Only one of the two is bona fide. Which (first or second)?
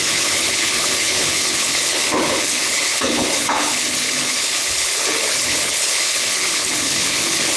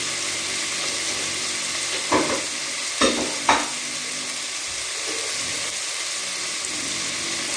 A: second